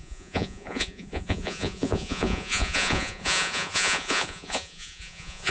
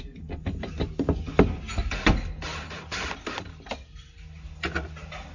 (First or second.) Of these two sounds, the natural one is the second